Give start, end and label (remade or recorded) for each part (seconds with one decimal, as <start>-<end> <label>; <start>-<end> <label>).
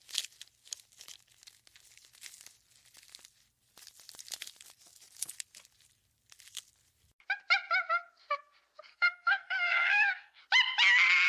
0.0-8.9 recorded; 8.9-10.4 remade; 10.4-11.3 recorded